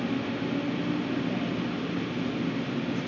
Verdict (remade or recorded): recorded